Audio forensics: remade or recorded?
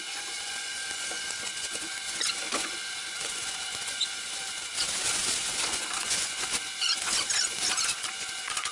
remade